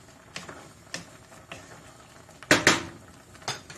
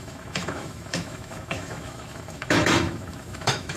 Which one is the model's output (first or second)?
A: second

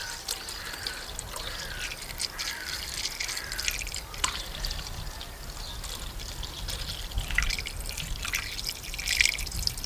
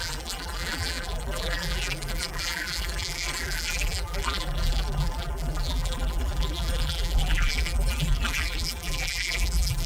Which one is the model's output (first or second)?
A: second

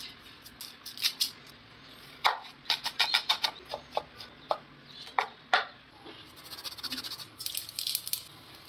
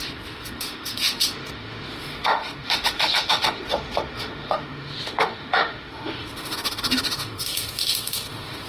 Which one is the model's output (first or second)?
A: second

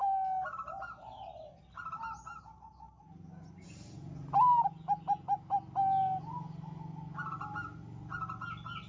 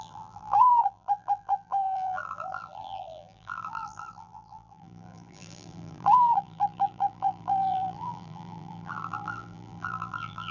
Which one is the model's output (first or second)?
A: second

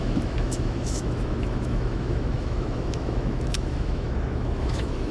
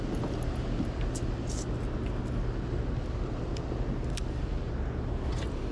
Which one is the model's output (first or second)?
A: first